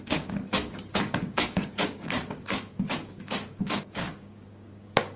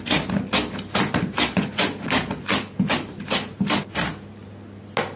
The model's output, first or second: first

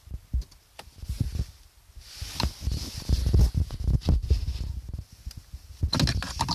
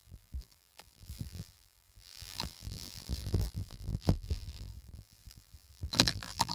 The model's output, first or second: second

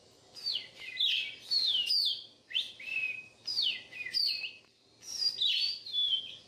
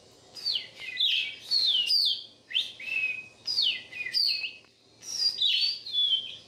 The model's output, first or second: first